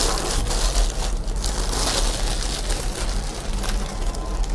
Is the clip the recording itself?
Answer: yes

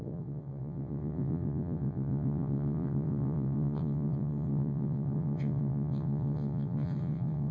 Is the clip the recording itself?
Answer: no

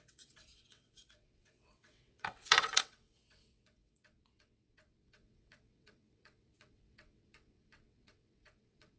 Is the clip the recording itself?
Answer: no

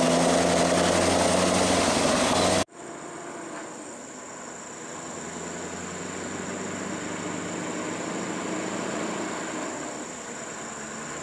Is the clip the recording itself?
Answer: yes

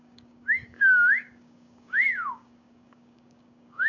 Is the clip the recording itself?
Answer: no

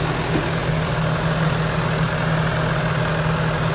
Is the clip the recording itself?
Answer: yes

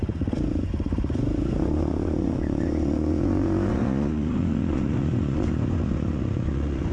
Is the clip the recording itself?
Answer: no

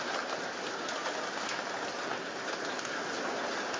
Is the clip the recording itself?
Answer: yes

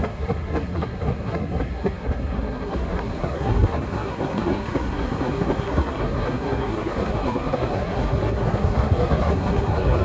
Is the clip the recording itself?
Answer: no